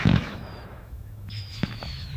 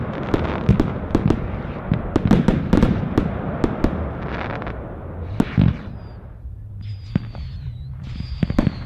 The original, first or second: second